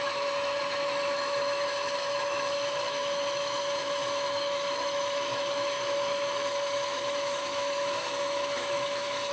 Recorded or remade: remade